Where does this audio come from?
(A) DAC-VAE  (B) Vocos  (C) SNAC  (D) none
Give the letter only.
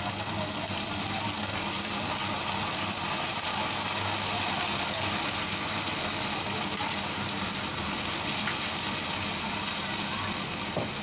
D